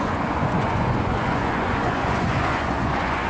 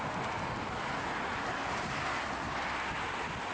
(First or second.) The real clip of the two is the second